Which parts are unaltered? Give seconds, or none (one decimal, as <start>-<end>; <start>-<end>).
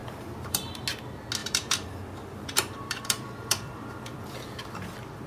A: 0.8-1.4; 4.6-5.3